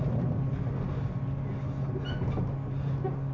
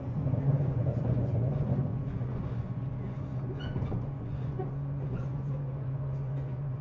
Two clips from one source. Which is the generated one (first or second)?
second